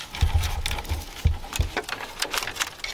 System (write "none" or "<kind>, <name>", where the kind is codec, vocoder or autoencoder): none